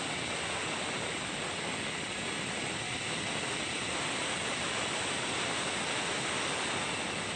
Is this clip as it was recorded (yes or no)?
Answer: yes